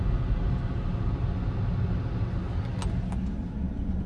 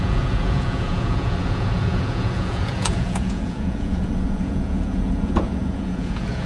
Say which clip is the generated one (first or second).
second